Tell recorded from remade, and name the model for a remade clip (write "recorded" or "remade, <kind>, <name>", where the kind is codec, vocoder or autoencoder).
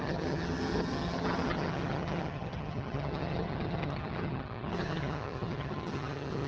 remade, vocoder, HiFi-GAN